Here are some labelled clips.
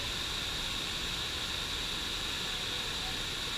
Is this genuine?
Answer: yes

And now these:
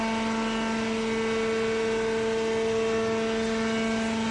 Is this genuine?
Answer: yes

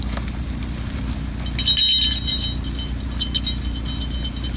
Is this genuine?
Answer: yes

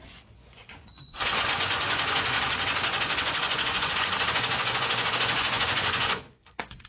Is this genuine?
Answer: no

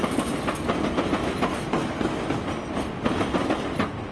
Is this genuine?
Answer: yes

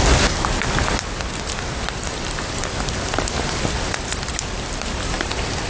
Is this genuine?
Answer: yes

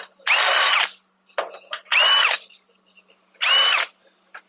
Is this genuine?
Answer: yes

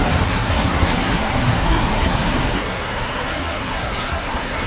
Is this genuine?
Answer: no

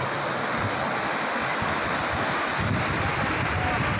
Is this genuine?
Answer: yes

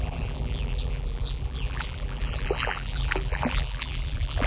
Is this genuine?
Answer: no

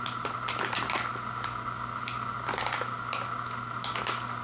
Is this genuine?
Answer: yes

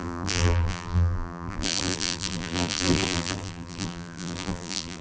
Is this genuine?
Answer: no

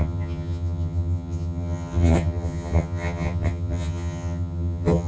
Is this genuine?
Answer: no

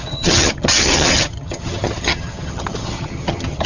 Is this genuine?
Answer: no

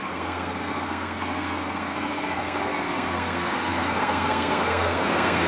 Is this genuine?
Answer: no